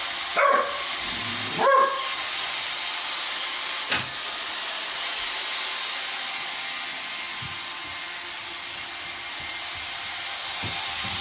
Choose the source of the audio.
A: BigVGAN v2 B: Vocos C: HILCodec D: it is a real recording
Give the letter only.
D